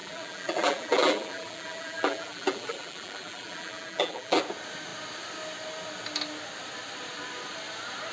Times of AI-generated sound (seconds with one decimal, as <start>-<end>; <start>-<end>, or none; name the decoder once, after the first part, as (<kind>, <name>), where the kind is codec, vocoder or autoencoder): 0.0-4.4 (vocoder, BigVGAN v2)